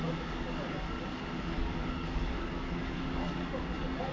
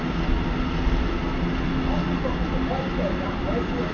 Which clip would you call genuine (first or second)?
second